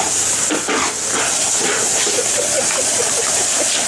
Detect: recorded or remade recorded